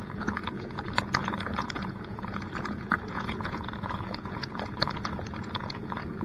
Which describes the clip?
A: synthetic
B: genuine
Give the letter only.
A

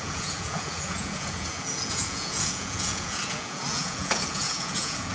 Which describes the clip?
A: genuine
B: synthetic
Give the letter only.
B